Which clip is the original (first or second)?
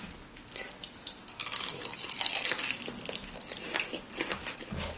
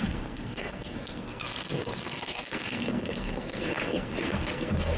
first